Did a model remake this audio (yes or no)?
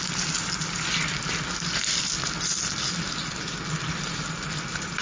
no